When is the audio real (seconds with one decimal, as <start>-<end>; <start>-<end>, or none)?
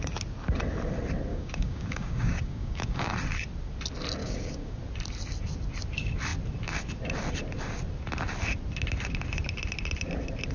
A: 0.0-1.3; 3.1-4.2; 4.8-10.5